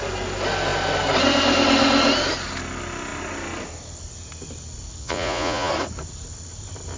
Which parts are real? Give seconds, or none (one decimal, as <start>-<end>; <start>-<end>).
0.0-5.0; 5.7-7.0